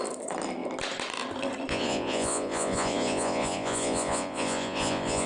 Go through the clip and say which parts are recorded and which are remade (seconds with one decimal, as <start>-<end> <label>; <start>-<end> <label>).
0.0-1.7 recorded; 1.7-5.3 remade